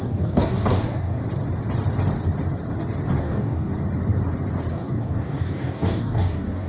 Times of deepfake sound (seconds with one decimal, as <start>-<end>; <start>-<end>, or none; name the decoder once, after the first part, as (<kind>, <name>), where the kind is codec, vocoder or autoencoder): 0.0-1.2 (codec, DAC); 3.2-3.7; 4.7-6.7